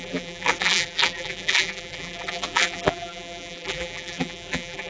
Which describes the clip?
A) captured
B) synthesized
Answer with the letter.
B